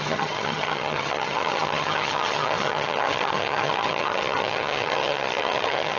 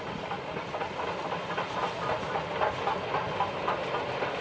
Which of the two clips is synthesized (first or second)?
first